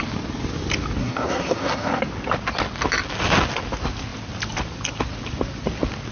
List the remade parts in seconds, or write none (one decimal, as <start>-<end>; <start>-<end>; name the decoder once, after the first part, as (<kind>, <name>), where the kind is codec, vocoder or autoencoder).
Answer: 1.0-2.0 (codec, SNAC)